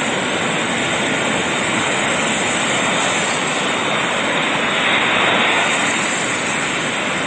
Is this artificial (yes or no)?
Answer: no